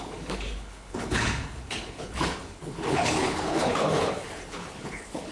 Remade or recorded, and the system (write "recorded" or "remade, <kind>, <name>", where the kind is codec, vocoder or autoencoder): remade, codec, HILCodec